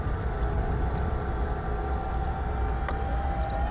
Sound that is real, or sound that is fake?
real